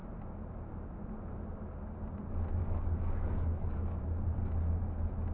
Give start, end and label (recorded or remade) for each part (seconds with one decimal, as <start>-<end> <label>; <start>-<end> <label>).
0.0-2.6 recorded; 2.6-4.0 remade; 4.0-5.3 recorded